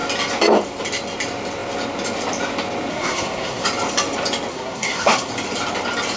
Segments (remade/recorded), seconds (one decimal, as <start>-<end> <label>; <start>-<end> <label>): 0.0-2.9 recorded; 2.9-3.6 remade; 3.6-4.5 recorded; 4.5-5.3 remade; 5.3-6.2 recorded